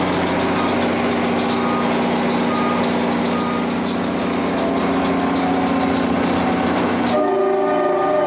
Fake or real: real